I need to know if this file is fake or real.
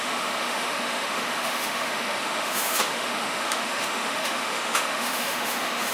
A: fake